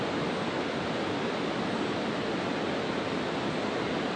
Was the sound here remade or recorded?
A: recorded